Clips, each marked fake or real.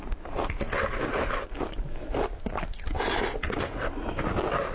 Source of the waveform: real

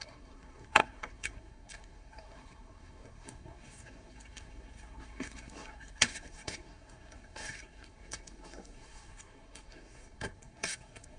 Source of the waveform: fake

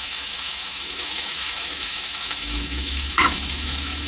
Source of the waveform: fake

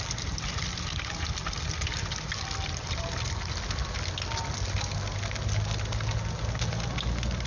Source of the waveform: real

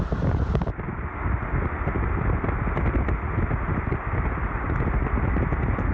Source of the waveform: real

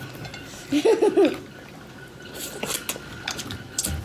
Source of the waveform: real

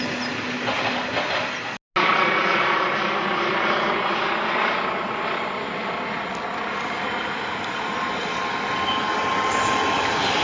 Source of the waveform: real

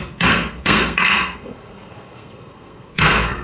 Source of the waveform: fake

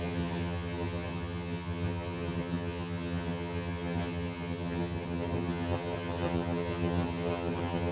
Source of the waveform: fake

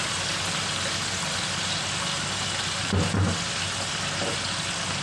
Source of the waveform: real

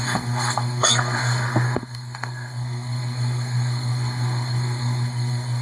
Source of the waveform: fake